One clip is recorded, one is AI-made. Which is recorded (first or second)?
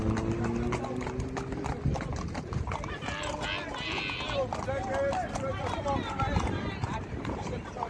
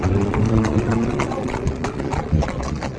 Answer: first